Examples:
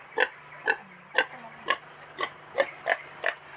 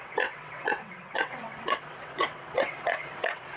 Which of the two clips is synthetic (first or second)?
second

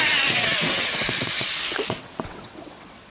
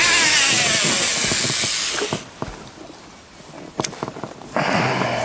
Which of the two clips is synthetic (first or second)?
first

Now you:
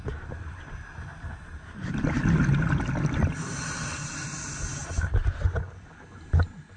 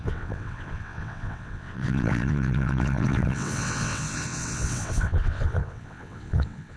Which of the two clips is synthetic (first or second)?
second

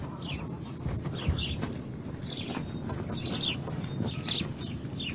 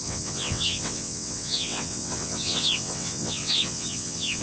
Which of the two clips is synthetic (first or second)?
second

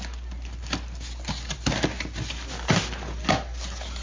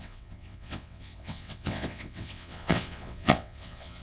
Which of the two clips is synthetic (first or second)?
second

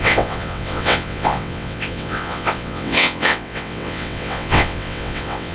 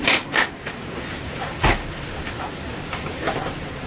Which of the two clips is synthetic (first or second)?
first